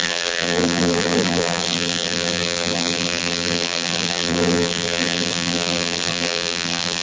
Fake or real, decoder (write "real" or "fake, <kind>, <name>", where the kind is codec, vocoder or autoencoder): fake, vocoder, BigVGAN v2